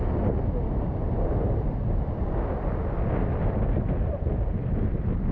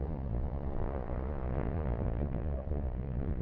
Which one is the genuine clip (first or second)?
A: first